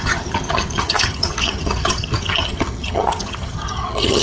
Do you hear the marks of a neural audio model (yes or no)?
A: yes